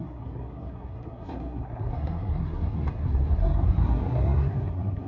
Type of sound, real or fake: fake